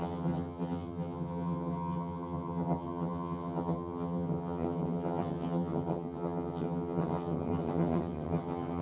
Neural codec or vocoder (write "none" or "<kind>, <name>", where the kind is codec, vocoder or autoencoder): vocoder, HiFi-GAN